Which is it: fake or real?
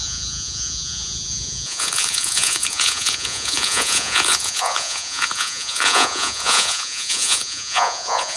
fake